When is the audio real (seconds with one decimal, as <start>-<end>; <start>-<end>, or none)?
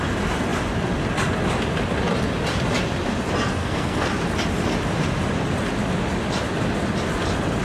0.0-3.6; 4.1-7.6